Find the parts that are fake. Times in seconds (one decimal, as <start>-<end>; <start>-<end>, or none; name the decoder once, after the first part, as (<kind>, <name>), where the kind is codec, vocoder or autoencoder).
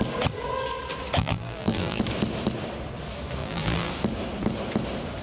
1.2-2.0 (vocoder, BigVGAN v2); 3.4-3.9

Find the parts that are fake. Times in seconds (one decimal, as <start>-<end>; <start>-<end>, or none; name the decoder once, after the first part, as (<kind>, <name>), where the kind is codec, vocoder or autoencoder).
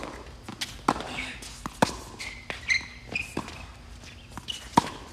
none